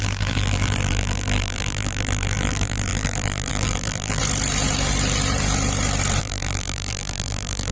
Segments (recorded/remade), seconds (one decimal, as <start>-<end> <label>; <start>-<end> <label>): 0.0-4.2 remade; 4.2-6.2 recorded; 6.2-7.7 remade